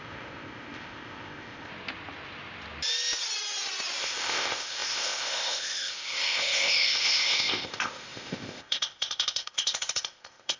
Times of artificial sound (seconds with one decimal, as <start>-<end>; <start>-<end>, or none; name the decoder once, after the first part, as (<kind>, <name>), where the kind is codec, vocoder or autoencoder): 0.0-1.7 (codec, ZipCodec); 4.0-10.6